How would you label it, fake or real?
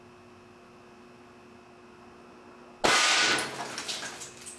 real